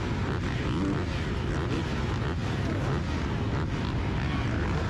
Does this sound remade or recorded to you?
recorded